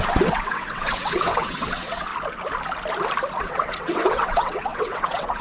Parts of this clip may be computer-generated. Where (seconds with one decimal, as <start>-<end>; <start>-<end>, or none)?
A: 0.0-2.1; 3.4-5.4